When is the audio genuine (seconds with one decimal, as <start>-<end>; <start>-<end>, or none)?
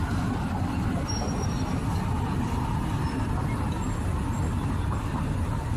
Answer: 0.0-5.8